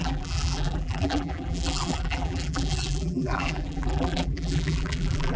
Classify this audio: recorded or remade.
remade